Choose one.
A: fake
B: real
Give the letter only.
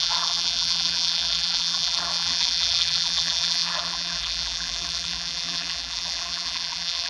A